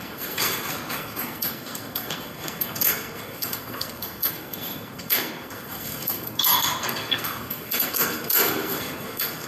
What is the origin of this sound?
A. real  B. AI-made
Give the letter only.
B